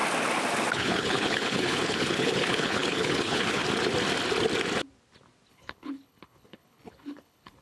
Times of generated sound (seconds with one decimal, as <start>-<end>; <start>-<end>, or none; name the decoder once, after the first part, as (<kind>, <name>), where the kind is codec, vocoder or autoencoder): 0.7-3.6 (codec, HILCodec); 5.5-7.6